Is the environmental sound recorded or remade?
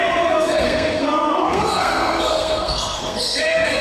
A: remade